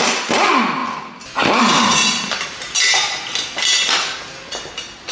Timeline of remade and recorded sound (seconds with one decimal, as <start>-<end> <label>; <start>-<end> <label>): 0.0-5.1 recorded